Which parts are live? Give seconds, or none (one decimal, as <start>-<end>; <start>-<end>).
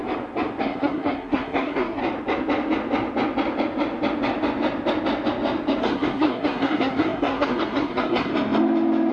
0.0-0.6; 2.0-5.8; 8.3-9.1